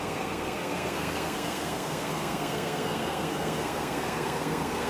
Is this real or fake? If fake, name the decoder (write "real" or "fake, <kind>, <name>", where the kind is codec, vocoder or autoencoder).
fake, codec, SNAC